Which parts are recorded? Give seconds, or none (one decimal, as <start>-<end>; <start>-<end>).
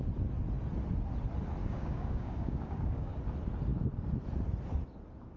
0.0-1.6; 3.2-5.4